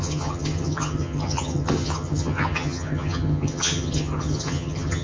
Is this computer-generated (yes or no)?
yes